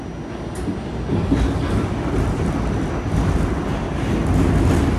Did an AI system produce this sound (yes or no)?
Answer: no